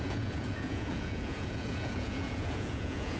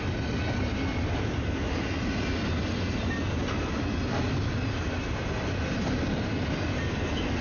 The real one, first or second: second